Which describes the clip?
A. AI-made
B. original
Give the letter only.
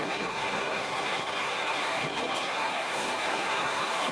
A